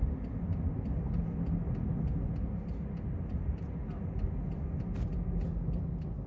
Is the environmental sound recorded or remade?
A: recorded